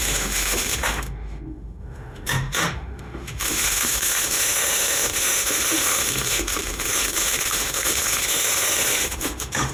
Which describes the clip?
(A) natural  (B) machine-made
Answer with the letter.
B